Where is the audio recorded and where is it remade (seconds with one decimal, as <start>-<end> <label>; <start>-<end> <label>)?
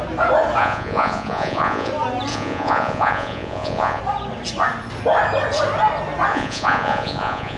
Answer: 0.0-0.6 recorded; 0.6-1.9 remade; 1.9-2.3 recorded; 2.3-4.0 remade; 4.0-6.3 recorded; 6.3-7.6 remade